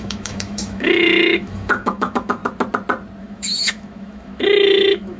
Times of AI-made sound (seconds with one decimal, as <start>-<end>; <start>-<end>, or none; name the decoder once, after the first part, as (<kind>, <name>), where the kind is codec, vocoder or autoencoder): 0.0-2.4 (autoencoder, DAC-VAE); 3.2-5.2